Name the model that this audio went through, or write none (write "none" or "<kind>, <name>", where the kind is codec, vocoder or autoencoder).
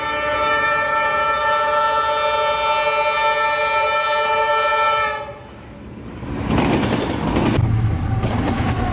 none